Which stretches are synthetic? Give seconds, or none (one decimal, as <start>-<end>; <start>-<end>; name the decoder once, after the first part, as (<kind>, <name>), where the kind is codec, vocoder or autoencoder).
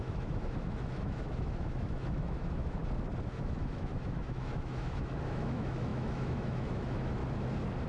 0.0-2.8 (autoencoder, DAC-VAE); 3.4-7.2